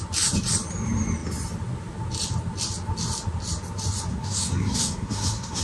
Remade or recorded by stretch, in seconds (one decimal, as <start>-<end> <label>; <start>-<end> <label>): 0.0-4.1 recorded; 4.1-5.6 remade